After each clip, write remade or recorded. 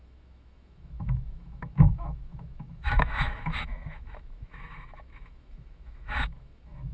remade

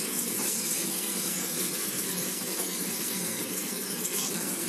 remade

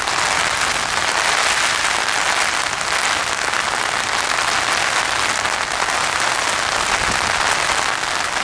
recorded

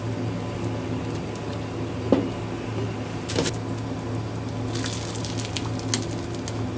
recorded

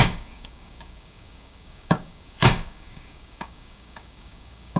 remade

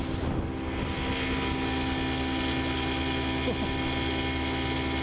recorded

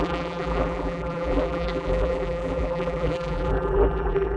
remade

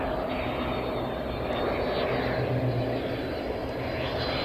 recorded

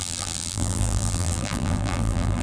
remade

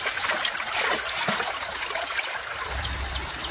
recorded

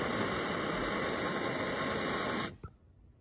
recorded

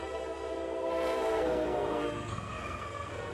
remade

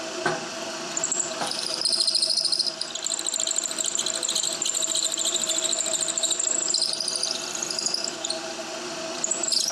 recorded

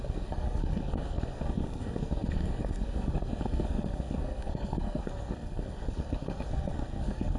remade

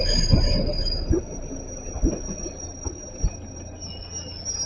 recorded